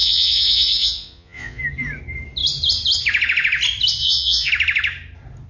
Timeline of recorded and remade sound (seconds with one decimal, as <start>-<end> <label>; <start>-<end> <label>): 0.0-1.6 remade; 1.6-4.0 recorded; 4.0-4.5 remade; 4.5-5.5 recorded